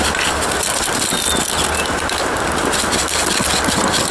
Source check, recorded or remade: recorded